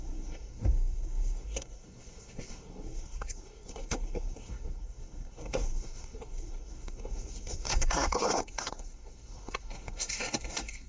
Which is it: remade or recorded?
remade